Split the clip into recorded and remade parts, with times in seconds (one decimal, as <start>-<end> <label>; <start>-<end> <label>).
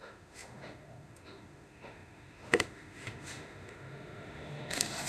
0.0-5.1 remade